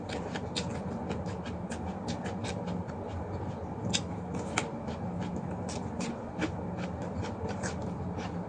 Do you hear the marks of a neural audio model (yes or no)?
no